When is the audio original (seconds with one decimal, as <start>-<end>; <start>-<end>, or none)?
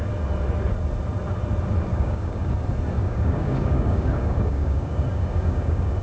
0.0-1.9; 2.5-3.0